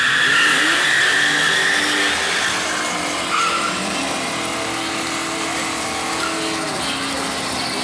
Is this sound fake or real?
real